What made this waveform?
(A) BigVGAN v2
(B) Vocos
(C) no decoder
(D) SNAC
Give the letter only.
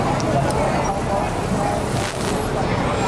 C